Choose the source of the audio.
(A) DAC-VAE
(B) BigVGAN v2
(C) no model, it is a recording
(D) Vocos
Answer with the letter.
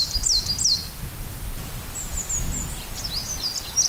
C